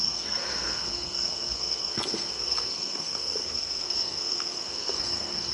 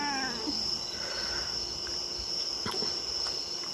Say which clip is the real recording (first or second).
second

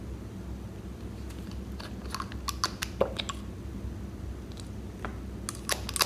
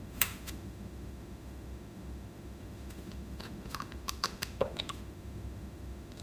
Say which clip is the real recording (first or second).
first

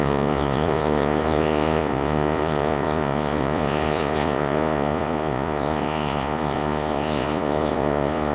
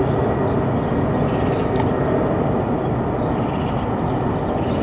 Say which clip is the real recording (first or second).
second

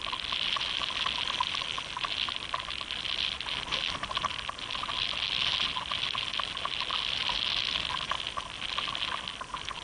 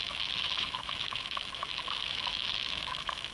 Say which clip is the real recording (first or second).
first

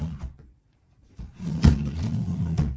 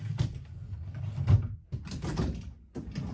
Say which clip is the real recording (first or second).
second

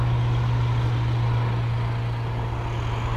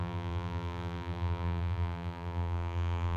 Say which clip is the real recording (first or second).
first